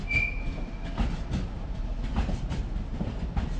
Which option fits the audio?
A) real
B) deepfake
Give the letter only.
A